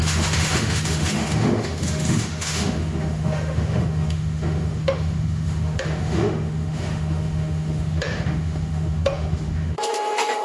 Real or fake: fake